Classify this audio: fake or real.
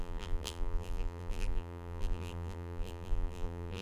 fake